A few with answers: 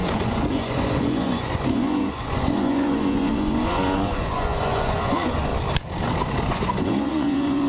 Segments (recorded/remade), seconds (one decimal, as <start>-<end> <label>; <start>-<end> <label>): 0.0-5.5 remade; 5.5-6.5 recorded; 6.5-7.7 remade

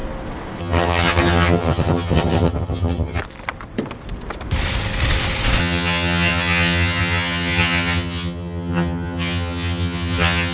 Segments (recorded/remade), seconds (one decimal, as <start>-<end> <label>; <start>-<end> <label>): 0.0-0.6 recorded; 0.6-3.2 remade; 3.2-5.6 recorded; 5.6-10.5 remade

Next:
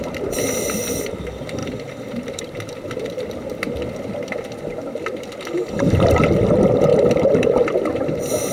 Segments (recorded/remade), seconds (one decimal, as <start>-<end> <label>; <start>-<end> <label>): 0.0-1.6 recorded; 1.6-3.9 remade; 3.9-6.9 recorded; 6.9-7.6 remade; 7.6-8.5 recorded

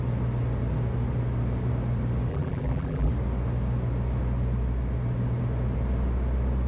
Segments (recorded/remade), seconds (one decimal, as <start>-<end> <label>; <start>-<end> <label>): 0.0-2.3 recorded; 2.3-3.1 remade; 3.1-6.7 recorded

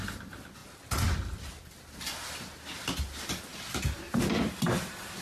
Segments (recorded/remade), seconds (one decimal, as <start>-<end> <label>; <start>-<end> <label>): 0.0-5.2 recorded

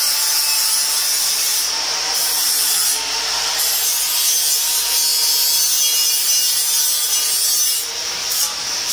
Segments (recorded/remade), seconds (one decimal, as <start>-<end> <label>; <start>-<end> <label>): 0.0-1.5 recorded; 1.5-3.5 remade; 3.5-8.2 recorded; 8.2-8.9 remade

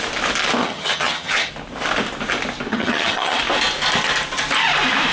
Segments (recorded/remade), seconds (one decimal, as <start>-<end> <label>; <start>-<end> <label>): 0.0-0.6 recorded; 0.6-1.5 remade; 1.5-2.7 recorded; 2.7-3.4 remade; 3.4-5.1 recorded